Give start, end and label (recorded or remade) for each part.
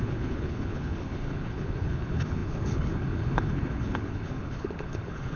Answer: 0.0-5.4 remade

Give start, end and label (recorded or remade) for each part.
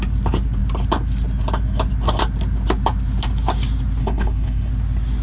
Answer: 0.0-4.0 recorded; 4.0-4.7 remade; 4.7-5.2 recorded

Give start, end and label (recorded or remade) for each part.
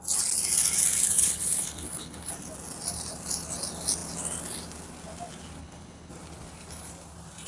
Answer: 0.0-1.2 recorded; 1.2-2.3 remade; 2.3-5.6 recorded; 5.6-6.1 remade; 6.1-7.5 recorded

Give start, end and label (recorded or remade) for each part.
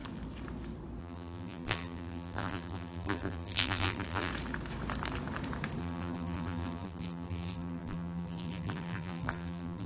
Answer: 0.0-1.0 recorded; 1.0-4.3 remade; 4.3-5.8 recorded; 5.8-9.9 remade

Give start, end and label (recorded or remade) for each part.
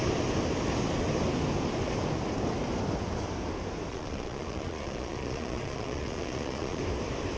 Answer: 0.0-3.9 recorded; 3.9-6.8 remade; 6.8-7.4 recorded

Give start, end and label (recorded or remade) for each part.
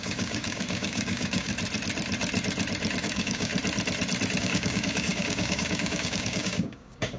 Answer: 0.0-1.5 remade; 1.5-3.0 recorded; 3.0-3.5 remade; 3.5-4.4 recorded; 4.4-7.2 remade